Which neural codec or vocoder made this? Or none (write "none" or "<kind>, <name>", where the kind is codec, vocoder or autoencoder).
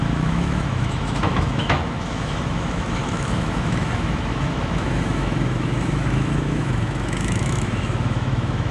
autoencoder, DAC-VAE